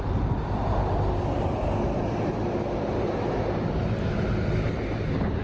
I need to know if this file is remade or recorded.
recorded